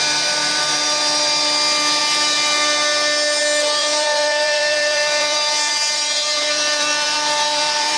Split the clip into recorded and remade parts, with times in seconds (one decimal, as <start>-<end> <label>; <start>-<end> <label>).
0.0-0.4 recorded; 0.4-1.0 remade; 1.0-3.8 recorded; 3.8-8.0 remade